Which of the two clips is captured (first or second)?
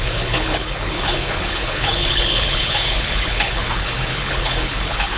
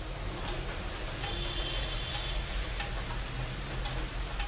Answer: second